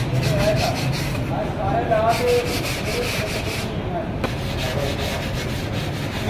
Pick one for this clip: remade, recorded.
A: recorded